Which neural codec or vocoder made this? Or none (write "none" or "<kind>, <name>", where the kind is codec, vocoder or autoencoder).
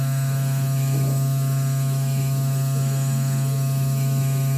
autoencoder, DAC-VAE